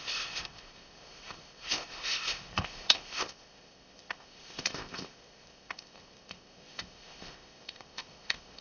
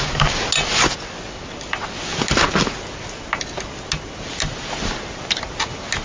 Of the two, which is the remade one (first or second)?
first